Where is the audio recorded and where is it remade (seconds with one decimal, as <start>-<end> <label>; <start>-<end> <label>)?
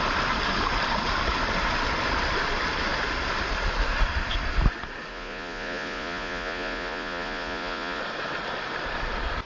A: 0.0-5.1 recorded; 5.1-8.0 remade; 8.0-9.5 recorded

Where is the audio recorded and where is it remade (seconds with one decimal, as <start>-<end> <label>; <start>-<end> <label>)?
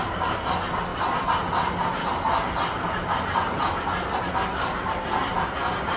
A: 0.0-6.0 recorded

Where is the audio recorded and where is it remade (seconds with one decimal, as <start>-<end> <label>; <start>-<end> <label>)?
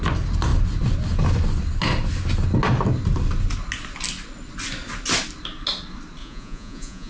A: 0.0-6.2 recorded; 6.2-7.1 remade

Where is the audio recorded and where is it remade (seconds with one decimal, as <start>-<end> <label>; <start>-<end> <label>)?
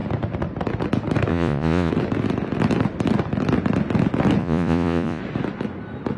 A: 0.0-1.3 recorded; 1.3-1.9 remade; 1.9-4.4 recorded; 4.4-5.2 remade; 5.2-6.2 recorded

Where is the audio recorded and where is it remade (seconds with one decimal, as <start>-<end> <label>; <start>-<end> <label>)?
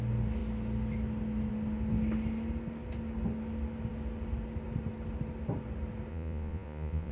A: 0.0-6.1 recorded; 6.1-7.1 remade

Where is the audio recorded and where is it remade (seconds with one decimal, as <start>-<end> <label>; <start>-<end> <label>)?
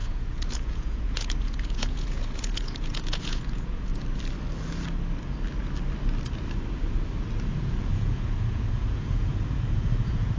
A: 0.0-3.9 remade; 3.9-7.6 recorded; 7.6-10.4 remade